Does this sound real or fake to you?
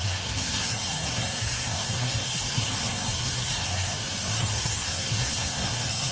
fake